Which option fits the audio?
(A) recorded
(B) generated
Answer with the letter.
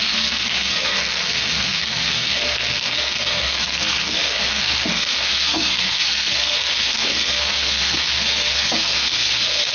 B